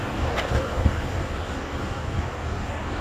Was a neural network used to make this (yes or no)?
yes